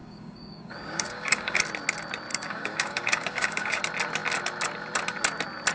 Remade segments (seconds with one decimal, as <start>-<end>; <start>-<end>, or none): 0.0-1.6; 2.3-3.8

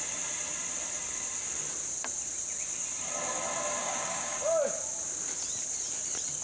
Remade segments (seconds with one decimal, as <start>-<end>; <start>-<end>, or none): 3.8-4.4

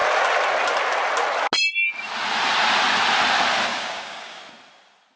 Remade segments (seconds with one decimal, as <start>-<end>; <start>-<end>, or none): 3.7-4.4

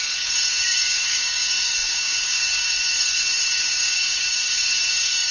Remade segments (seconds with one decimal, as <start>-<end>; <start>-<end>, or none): 0.0-5.3

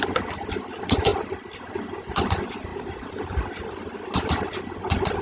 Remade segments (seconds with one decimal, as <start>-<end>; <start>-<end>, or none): none

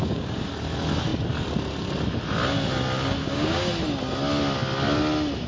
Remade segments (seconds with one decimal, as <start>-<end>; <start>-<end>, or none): 0.0-0.5; 3.2-3.7

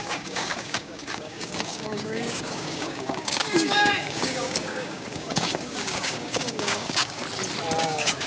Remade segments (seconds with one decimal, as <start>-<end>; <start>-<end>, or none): 0.0-7.2; 7.8-8.3